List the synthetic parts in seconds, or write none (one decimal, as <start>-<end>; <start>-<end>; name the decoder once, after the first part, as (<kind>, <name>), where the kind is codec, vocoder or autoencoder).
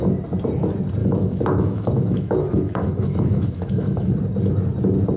1.0-4.1 (autoencoder, DAC-VAE)